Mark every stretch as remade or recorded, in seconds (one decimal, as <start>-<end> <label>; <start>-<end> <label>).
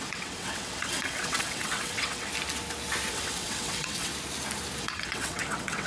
0.0-2.3 remade; 2.3-3.1 recorded; 3.1-4.1 remade; 4.1-4.8 recorded; 4.8-5.9 remade